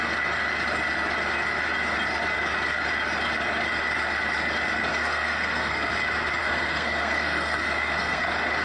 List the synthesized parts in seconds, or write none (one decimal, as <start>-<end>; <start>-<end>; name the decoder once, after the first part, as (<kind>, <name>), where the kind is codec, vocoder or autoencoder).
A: 4.9-5.9 (codec, SNAC); 6.4-8.2